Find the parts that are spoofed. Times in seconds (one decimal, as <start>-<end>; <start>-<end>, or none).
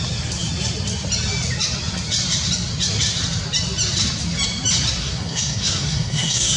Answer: 5.0-6.6